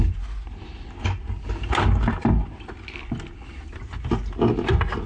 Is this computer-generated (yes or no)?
no